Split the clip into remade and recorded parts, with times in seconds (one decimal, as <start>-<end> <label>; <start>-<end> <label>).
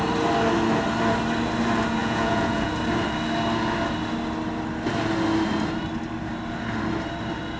0.0-2.0 recorded; 2.0-2.7 remade; 2.7-7.6 recorded